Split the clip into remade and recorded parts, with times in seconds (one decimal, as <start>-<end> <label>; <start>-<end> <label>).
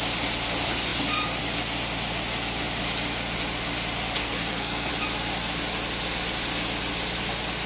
0.0-4.2 recorded; 4.2-4.9 remade; 4.9-7.7 recorded